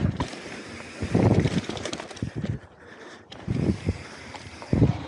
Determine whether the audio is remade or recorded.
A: remade